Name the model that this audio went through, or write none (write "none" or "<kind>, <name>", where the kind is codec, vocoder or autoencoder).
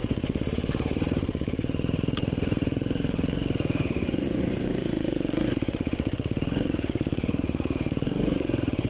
vocoder, Vocos